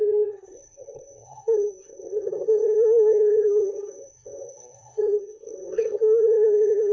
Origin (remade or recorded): remade